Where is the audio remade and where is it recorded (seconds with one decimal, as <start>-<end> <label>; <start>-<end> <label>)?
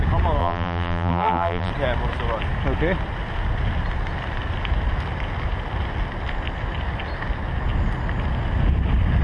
0.0-0.4 recorded; 0.4-1.7 remade; 1.7-9.2 recorded